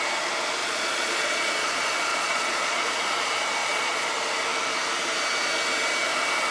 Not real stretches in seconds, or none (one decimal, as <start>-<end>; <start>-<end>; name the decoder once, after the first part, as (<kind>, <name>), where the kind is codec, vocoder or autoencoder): 0.6-1.7 (vocoder, Vocos); 2.1-2.9; 3.6-4.1